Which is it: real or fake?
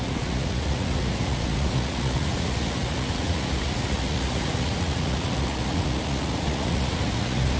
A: fake